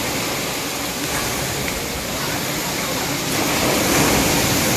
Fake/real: real